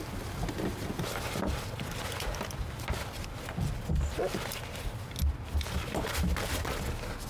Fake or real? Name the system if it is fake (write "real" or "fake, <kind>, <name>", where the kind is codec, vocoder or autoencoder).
real